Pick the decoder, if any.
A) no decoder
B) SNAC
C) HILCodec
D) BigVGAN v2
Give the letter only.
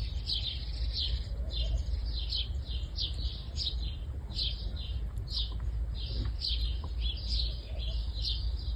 A